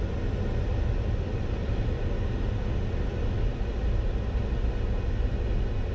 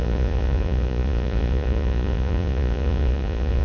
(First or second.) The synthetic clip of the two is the second